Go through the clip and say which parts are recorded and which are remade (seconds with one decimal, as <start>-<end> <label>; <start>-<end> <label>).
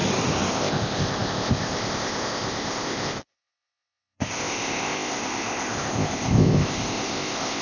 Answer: 0.0-0.5 recorded; 0.5-7.6 remade